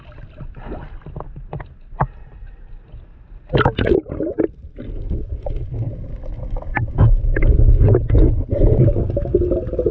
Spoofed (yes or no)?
no